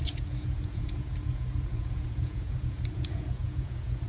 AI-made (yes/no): yes